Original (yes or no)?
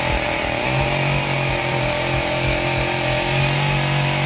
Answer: yes